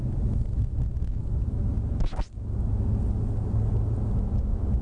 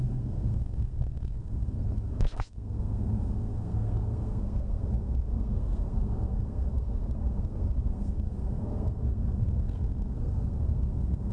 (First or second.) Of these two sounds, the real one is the first